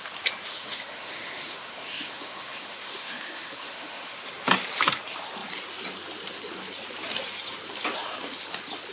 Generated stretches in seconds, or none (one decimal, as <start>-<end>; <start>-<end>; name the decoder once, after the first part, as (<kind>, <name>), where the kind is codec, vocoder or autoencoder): 0.5-4.2 (autoencoder, DAC-VAE)